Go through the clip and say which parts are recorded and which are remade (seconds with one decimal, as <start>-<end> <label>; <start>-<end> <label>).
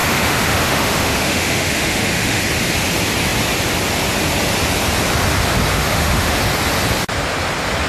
0.0-2.4 remade; 2.4-5.7 recorded; 5.7-6.4 remade; 6.4-7.9 recorded